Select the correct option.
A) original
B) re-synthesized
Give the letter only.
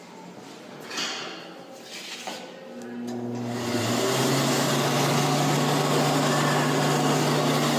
A